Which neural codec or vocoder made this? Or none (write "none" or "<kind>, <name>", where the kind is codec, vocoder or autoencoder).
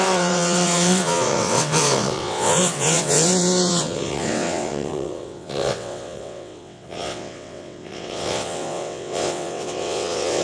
vocoder, WaveNeXt